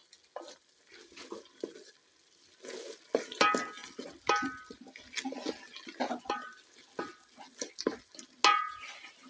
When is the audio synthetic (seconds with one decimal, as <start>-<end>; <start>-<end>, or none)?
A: none